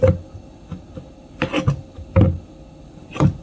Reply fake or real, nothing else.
real